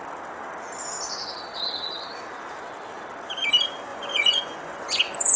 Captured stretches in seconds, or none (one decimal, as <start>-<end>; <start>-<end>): 0.0-3.9